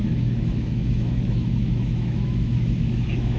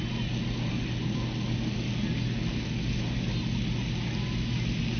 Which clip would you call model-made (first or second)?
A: first